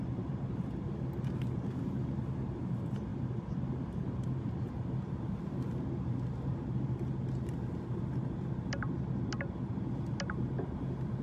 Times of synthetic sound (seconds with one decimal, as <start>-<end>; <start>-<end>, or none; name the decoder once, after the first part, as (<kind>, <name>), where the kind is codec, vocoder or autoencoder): none